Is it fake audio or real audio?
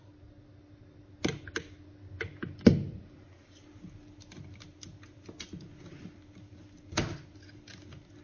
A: real